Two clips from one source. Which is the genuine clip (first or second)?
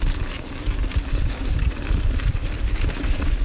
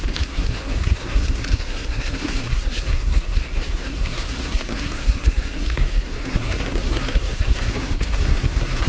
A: first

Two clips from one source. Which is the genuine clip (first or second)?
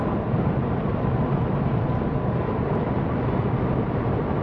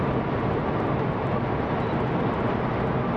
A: second